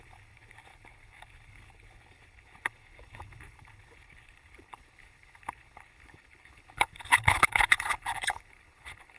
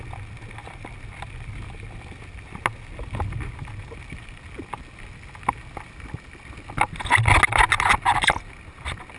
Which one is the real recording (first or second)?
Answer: second